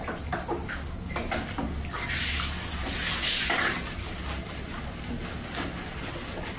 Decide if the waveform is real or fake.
real